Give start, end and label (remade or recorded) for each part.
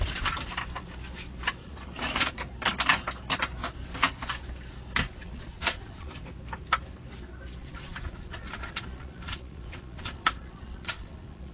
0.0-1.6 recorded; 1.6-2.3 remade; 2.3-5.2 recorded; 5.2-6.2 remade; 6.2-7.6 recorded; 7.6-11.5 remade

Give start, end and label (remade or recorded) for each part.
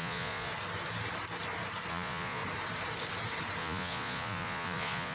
0.0-0.5 remade; 0.5-1.9 recorded; 1.9-2.4 remade; 2.4-3.6 recorded; 3.6-5.1 remade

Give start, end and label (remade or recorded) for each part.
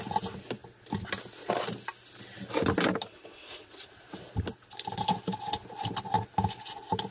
0.0-7.1 recorded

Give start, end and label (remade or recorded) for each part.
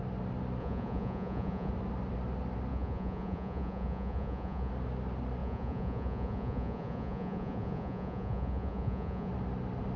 0.0-0.6 recorded; 0.6-1.7 remade; 1.7-2.7 recorded; 2.7-4.7 remade; 4.7-5.4 recorded; 5.4-9.3 remade; 9.3-10.0 recorded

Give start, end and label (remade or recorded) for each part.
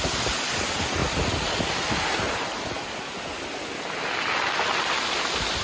0.0-5.6 recorded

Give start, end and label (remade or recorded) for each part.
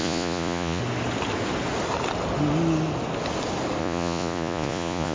0.0-0.8 remade; 0.8-3.8 recorded; 3.8-5.1 remade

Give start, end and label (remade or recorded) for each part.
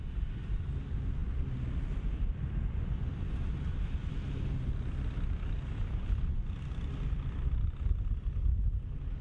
0.0-9.2 recorded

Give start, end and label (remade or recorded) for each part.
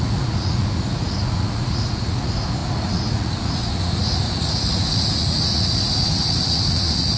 0.0-7.2 remade